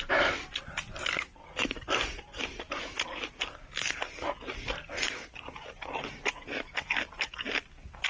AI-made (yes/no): no